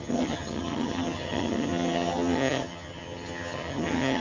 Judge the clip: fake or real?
fake